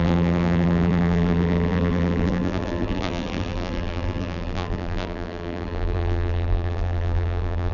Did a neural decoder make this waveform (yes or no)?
yes